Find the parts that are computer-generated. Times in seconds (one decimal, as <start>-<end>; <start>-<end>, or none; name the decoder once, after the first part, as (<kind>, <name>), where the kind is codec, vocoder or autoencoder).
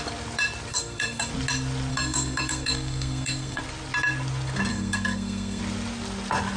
0.7-1.3 (codec, SNAC); 1.9-3.6; 4.7-5.6